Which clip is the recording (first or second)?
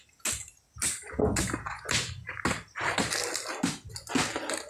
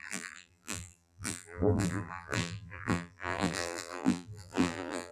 first